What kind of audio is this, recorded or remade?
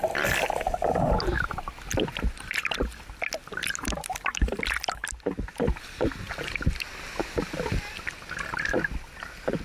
recorded